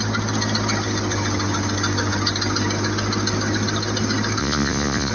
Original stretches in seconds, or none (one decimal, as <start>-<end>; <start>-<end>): 0.0-4.4

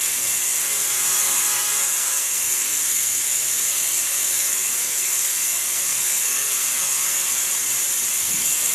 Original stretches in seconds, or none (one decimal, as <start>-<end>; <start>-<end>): 7.4-8.1

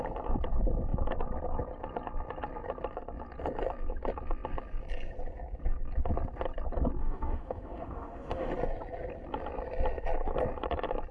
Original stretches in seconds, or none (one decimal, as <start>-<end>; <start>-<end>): 0.0-7.0; 8.5-11.1

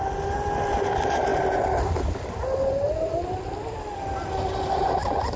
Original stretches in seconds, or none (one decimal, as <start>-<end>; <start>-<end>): 0.0-5.4

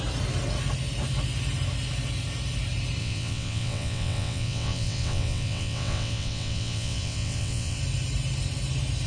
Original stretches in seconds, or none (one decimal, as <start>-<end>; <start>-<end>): 0.0-3.0; 7.8-9.1

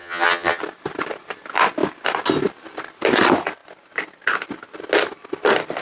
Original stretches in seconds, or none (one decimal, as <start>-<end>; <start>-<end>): 0.6-5.8

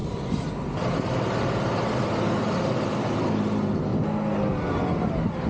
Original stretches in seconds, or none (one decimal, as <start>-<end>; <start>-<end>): 3.3-5.5

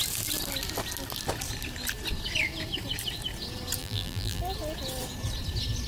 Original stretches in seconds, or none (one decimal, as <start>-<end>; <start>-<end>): 0.0-3.8; 4.4-5.9